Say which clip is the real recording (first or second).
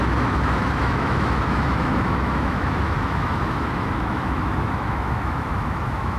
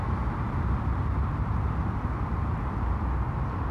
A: second